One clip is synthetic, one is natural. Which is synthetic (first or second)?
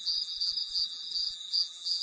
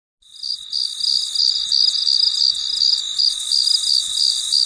first